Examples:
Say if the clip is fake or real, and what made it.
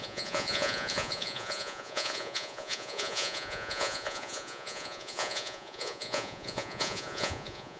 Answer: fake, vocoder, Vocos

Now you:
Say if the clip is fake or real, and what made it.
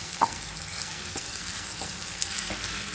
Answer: fake, codec, SNAC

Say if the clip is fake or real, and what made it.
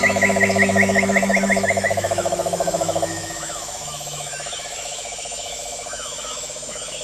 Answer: fake, autoencoder, DAC-VAE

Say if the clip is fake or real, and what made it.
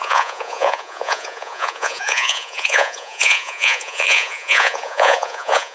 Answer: fake, vocoder, Vocos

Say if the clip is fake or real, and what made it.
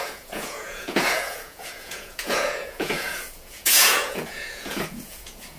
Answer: fake, vocoder, Vocos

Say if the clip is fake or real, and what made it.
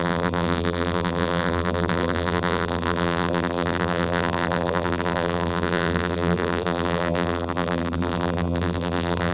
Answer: fake, vocoder, BigVGAN v2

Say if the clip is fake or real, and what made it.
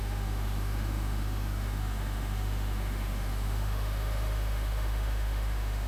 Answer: fake, autoencoder, DAC-VAE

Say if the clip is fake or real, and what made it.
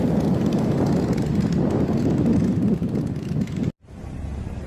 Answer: real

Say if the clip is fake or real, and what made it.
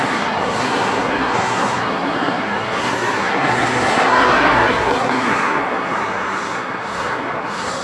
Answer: fake, codec, SNAC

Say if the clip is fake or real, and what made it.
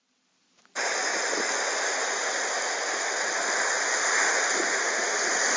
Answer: real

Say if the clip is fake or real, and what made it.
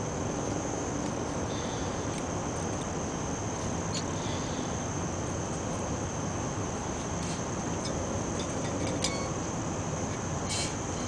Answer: real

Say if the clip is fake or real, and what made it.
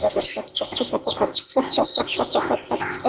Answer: fake, codec, ZipCodec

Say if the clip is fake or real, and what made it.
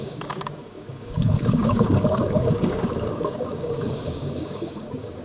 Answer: fake, codec, DAC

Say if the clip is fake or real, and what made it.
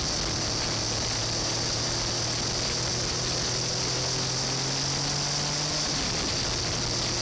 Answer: real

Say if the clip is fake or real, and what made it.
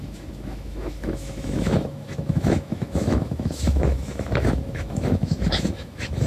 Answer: fake, autoencoder, DAC-VAE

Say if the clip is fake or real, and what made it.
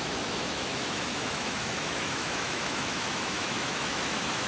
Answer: fake, autoencoder, DAC-VAE